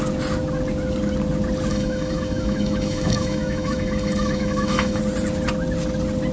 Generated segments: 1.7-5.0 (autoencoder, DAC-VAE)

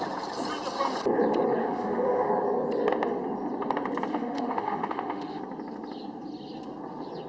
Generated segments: 1.6-2.3 (autoencoder, DAC-VAE); 4.1-5.4

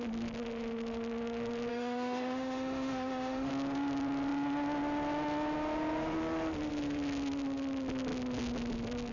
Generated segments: 1.7-3.5 (autoencoder, DAC-VAE)